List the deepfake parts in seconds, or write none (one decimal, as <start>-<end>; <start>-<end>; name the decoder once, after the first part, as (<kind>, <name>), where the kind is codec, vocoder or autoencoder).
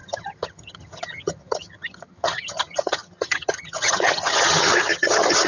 0.0-5.5 (vocoder, HiFi-GAN)